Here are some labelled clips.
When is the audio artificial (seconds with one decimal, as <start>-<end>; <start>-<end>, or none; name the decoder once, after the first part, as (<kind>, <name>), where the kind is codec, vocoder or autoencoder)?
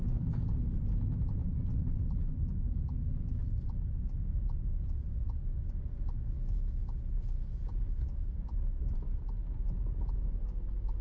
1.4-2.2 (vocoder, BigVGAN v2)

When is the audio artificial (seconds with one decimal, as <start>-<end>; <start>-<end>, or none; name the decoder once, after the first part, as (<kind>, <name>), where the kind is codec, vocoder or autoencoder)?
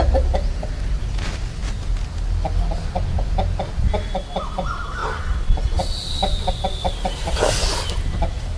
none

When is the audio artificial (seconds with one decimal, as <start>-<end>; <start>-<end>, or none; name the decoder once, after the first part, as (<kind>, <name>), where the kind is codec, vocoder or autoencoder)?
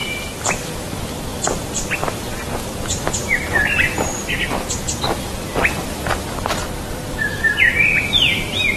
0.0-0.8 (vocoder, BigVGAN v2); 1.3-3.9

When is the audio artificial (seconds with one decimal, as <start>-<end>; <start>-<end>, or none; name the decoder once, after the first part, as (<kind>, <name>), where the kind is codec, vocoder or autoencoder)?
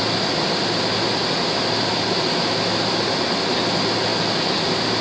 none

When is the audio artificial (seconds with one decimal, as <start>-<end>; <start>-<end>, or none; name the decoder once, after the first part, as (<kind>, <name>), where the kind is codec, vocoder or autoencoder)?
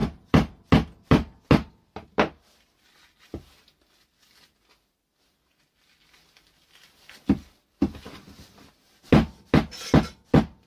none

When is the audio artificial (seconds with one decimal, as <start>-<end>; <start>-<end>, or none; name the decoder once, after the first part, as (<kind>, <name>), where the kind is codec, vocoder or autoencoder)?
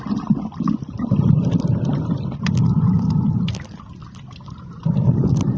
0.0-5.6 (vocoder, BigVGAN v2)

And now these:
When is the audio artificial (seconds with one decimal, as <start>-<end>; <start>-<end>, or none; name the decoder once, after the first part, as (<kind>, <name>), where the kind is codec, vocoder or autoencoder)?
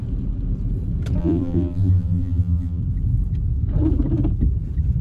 1.2-2.8 (vocoder, BigVGAN v2)